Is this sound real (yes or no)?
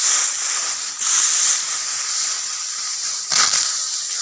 yes